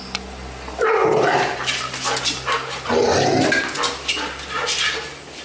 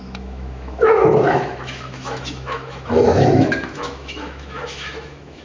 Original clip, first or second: first